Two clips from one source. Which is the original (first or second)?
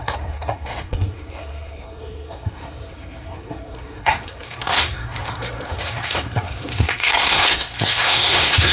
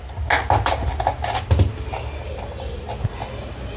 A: second